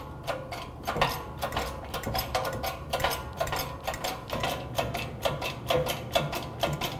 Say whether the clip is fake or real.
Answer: fake